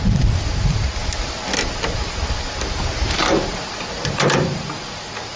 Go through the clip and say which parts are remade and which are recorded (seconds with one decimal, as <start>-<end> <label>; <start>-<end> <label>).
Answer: 0.0-5.4 recorded